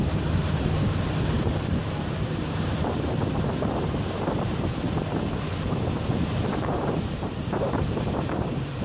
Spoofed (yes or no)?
yes